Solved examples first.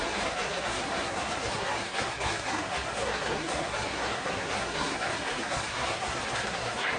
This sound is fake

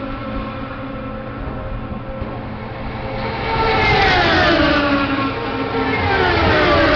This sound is real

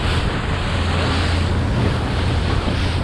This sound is real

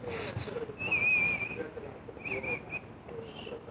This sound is real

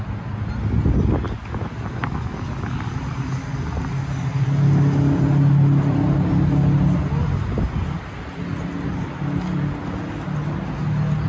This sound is real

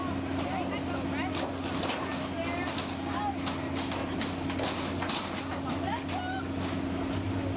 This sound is real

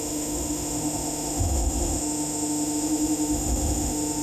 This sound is fake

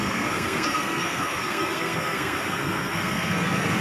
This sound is fake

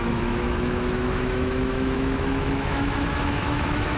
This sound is fake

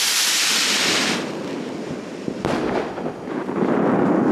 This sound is real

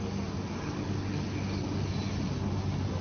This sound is real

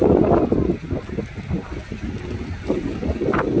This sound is real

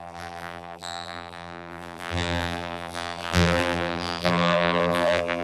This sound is fake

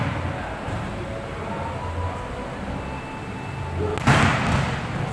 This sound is real